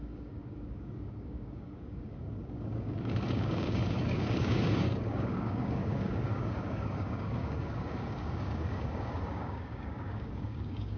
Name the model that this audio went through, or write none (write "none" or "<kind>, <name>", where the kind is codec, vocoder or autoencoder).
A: codec, DAC